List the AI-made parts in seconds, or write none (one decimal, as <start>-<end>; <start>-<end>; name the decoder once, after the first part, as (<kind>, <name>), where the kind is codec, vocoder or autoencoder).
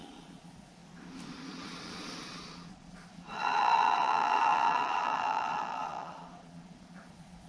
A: 0.0-0.8 (vocoder, Vocos); 1.5-7.5